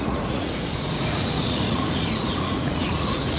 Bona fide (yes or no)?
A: no